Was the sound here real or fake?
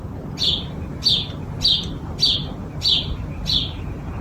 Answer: real